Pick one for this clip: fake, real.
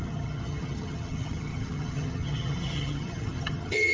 fake